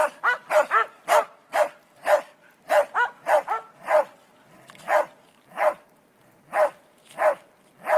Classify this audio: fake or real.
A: real